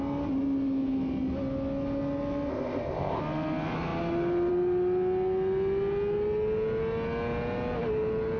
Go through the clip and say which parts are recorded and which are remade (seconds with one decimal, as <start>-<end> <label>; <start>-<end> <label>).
0.0-2.5 recorded; 2.5-3.2 remade; 3.2-8.4 recorded